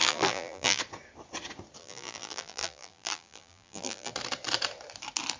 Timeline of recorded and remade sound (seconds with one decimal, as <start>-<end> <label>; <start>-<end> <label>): 0.0-0.8 remade; 0.8-1.8 recorded; 1.8-4.1 remade; 4.1-5.4 recorded